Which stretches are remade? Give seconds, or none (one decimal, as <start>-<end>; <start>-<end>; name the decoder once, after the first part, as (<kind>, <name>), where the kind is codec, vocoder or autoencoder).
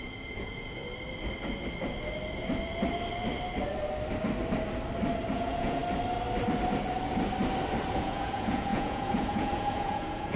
0.0-0.8 (vocoder, Vocos); 5.3-5.8; 7.9-10.4